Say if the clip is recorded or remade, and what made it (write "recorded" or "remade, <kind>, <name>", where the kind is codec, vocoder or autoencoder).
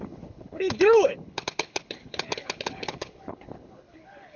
remade, codec, HILCodec